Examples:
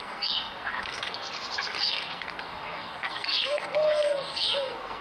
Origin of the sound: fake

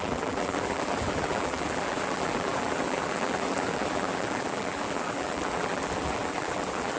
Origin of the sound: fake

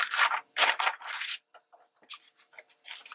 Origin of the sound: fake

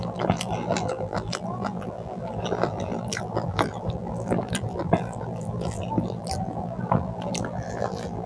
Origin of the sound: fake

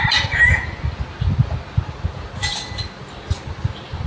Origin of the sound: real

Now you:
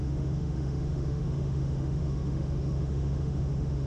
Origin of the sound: fake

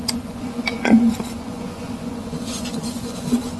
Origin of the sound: fake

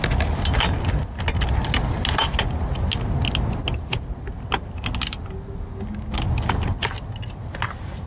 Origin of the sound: real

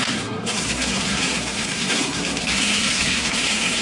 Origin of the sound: fake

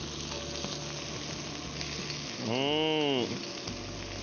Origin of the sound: real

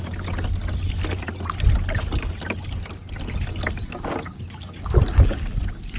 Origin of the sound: real